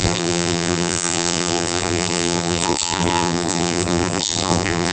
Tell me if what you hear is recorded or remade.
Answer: remade